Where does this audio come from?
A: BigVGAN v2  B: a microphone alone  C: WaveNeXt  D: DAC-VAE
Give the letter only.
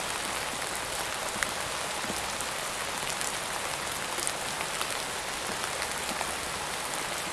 B